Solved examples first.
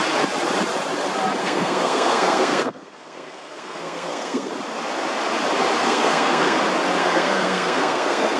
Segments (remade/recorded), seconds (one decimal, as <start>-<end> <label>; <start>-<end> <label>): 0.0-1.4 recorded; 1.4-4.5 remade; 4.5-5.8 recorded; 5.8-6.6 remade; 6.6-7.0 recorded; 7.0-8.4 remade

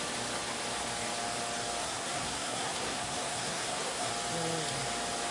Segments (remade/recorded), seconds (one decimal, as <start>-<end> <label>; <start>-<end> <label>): 0.0-1.8 recorded; 1.8-4.1 remade; 4.1-5.3 recorded

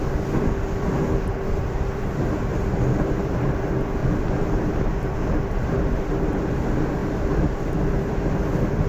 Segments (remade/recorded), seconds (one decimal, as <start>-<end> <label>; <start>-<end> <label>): 0.0-4.0 recorded; 4.0-5.7 remade; 5.7-7.0 recorded; 7.0-7.7 remade; 7.7-8.9 recorded

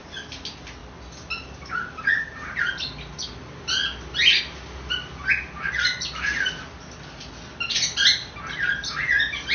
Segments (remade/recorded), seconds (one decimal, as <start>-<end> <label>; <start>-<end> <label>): 0.0-9.5 recorded